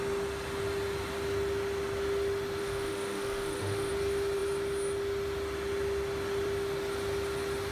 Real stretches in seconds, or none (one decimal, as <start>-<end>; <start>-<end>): 0.0-2.6; 3.9-7.7